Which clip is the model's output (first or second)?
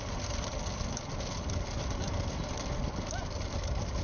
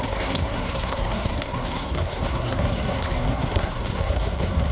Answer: second